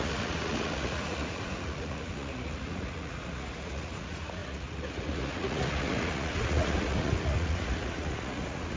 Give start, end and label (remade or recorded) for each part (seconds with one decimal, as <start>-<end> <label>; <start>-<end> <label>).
0.0-8.8 remade